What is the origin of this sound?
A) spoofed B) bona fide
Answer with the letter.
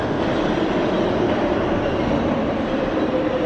B